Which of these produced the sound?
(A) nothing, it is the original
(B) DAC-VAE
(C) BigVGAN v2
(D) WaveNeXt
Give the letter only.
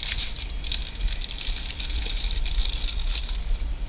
A